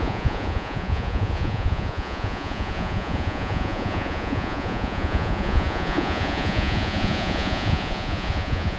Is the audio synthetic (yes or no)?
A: yes